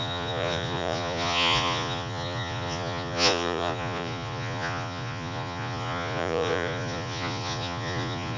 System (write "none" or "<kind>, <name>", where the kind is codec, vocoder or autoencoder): vocoder, Vocos